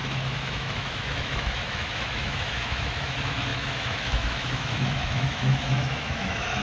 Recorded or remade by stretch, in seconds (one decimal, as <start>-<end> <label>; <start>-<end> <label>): 0.0-6.6 remade